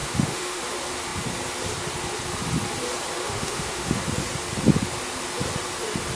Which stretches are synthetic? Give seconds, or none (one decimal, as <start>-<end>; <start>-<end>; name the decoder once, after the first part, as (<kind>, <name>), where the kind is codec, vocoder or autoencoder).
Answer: 0.0-0.6 (autoencoder, DAC-VAE); 3.2-4.0